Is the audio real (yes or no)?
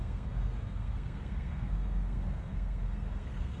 no